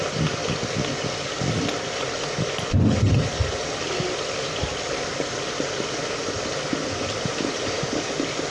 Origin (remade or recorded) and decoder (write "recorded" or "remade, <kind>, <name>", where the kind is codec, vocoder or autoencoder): recorded